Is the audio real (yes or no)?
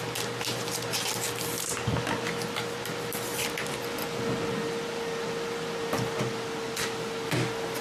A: yes